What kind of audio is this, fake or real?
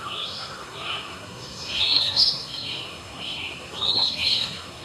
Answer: fake